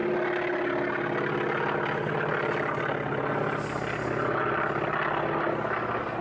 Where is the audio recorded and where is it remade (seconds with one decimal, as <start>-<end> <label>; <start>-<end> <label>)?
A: 0.0-6.2 recorded